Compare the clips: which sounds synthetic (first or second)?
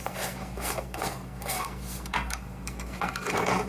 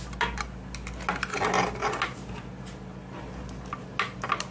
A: first